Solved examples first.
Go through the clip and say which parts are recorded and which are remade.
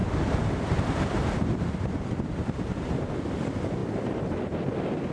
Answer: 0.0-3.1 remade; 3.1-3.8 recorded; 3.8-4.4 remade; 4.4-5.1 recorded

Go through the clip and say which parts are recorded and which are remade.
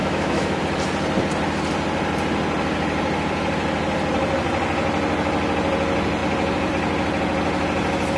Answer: 0.0-0.6 remade; 0.6-8.2 recorded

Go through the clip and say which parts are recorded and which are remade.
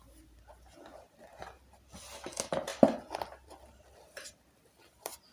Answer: 0.0-5.3 recorded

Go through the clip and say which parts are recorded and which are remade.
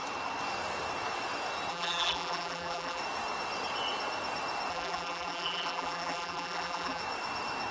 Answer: 0.0-1.7 recorded; 1.7-3.0 remade; 3.0-4.7 recorded; 4.7-7.0 remade; 7.0-7.7 recorded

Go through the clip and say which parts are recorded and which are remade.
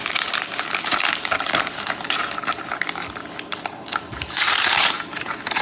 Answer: 0.0-0.6 recorded; 0.6-2.2 remade; 2.2-3.5 recorded; 3.5-5.6 remade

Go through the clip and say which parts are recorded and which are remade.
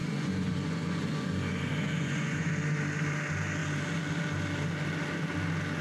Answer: 0.0-2.5 remade; 2.5-5.8 recorded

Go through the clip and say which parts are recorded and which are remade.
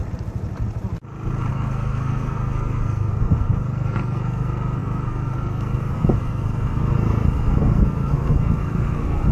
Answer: 0.0-1.5 recorded; 1.5-9.3 remade